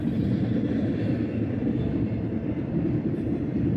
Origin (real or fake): real